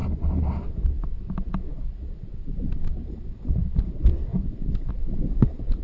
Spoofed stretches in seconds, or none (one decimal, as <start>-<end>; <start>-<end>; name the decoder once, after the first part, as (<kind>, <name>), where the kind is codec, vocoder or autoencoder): none